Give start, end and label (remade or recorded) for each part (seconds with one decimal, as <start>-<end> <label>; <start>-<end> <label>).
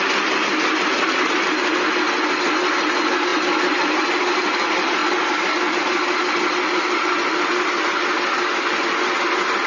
0.0-9.7 recorded